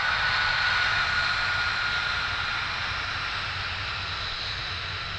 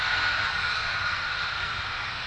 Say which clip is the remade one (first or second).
second